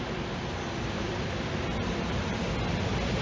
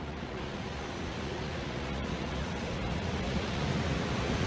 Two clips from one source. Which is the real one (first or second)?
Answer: first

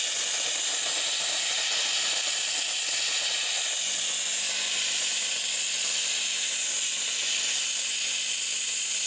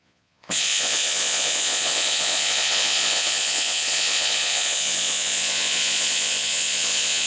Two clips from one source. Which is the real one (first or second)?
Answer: first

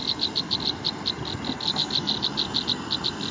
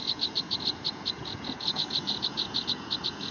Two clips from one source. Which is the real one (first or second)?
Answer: first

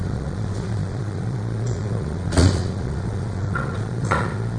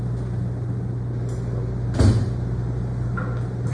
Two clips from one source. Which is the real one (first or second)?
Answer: second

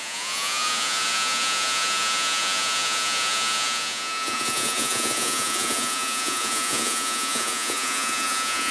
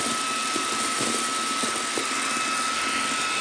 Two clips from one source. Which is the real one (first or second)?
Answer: second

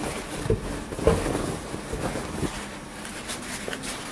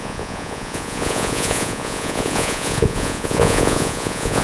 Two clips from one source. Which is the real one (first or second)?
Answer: first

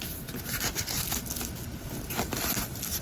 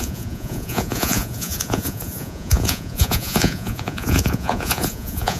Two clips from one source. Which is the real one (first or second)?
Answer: first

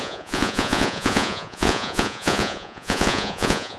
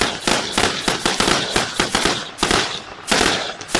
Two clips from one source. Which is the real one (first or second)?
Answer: second